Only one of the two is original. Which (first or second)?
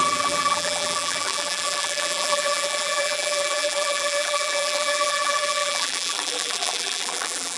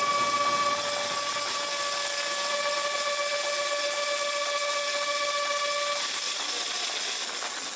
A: second